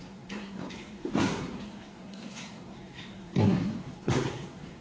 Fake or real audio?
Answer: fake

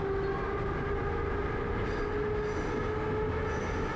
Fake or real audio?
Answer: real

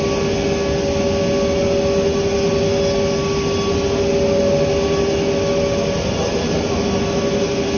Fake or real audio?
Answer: real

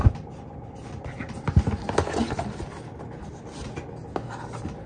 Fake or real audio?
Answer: real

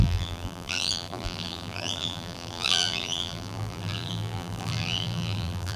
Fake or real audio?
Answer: fake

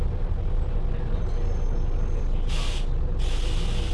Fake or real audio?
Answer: real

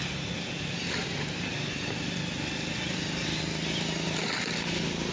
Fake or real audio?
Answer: real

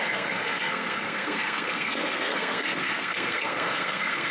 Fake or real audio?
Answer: fake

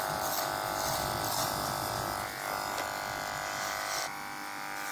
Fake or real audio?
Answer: real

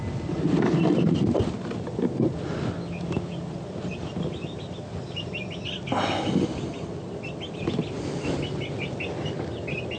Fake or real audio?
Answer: real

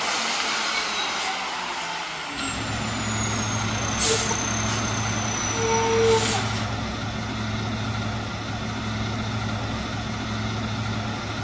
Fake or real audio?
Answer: real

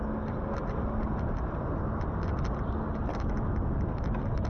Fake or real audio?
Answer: real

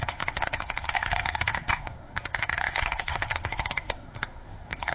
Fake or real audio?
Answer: fake